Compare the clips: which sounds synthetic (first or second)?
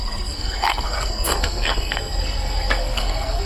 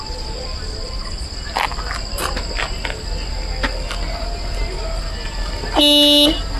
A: first